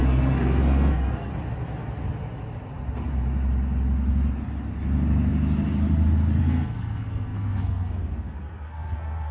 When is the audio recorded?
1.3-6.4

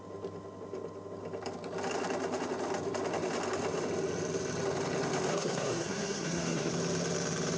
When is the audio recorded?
0.0-5.3; 6.7-7.6

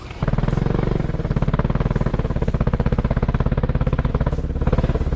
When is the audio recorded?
0.0-5.2

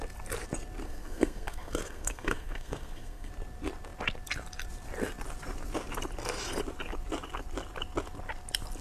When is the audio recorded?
0.0-0.8; 3.3-8.8

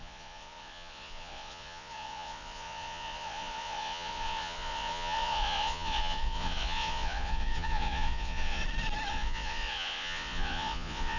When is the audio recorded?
8.6-9.1

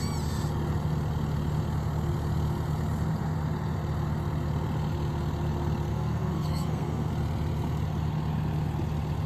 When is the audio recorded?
0.0-5.9; 7.1-9.3

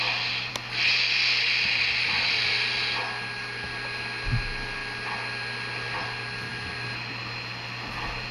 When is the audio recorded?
0.0-8.3

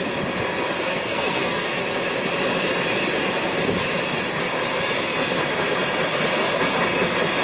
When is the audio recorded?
0.0-0.9; 1.8-7.4